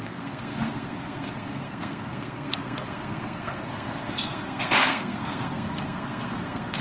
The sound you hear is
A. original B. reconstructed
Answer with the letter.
B